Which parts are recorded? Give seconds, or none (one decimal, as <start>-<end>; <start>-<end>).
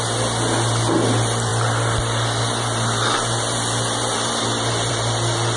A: 0.0-5.6